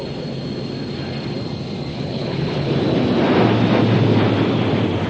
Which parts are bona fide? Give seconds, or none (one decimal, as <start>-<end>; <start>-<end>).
0.0-1.9; 2.7-5.1

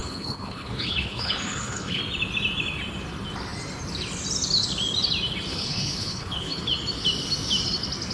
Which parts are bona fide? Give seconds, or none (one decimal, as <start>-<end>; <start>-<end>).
2.0-5.5; 6.6-8.1